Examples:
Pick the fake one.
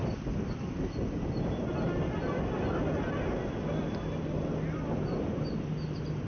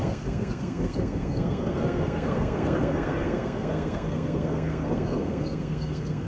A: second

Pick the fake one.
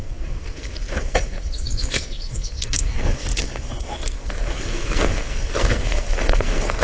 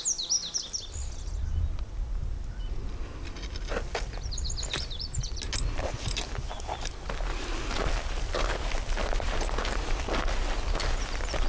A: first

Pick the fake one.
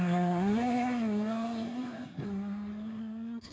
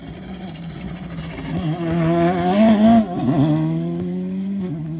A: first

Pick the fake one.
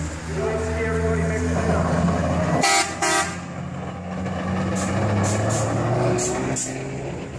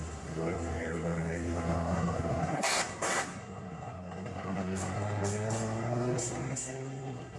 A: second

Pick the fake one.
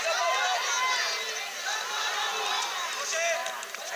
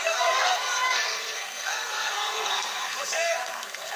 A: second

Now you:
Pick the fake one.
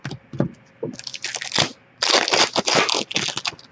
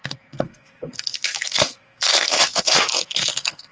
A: second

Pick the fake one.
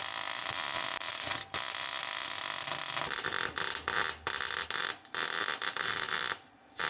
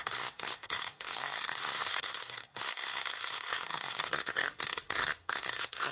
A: second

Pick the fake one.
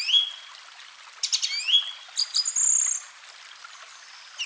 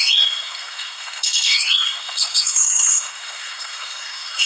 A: second